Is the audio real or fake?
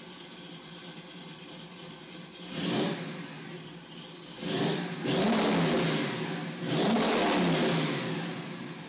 real